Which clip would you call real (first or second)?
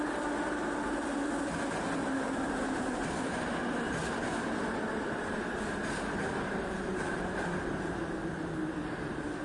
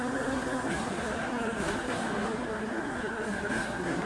first